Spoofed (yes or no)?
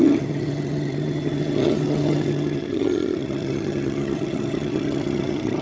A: yes